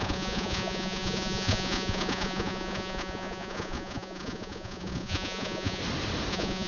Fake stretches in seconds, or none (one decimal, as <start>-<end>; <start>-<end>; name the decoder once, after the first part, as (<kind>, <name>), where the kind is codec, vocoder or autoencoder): 0.0-5.8 (vocoder, Vocos); 6.3-6.7